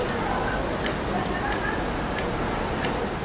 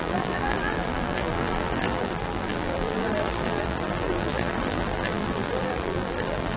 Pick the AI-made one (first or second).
second